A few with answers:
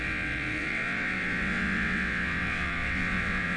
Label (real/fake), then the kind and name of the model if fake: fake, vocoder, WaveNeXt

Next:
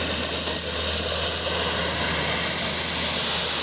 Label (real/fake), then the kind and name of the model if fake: real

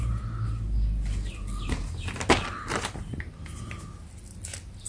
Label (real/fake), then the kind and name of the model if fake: real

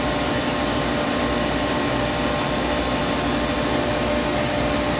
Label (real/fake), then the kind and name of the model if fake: real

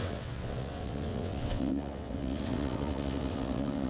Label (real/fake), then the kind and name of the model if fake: fake, vocoder, WaveNeXt